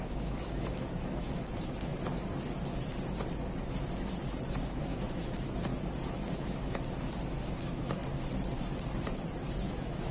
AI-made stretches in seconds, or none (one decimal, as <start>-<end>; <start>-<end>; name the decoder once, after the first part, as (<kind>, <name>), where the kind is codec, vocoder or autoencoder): 0.0-1.9 (autoencoder, DAC-VAE); 4.6-5.7; 6.3-8.0; 9.6-10.1